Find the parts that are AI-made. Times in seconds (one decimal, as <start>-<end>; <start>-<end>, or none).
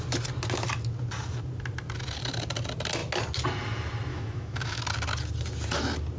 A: 4.1-4.8